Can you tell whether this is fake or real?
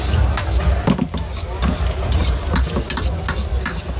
real